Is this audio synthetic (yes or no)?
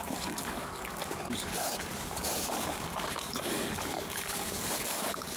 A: yes